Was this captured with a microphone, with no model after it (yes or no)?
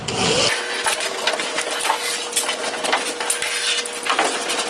yes